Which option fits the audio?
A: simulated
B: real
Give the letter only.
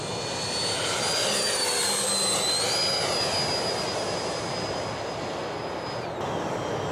B